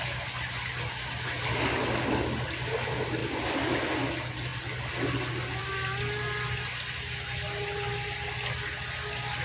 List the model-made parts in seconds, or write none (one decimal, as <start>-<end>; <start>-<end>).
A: none